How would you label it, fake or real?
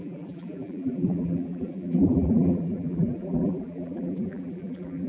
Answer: fake